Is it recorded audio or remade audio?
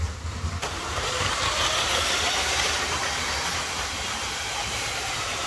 remade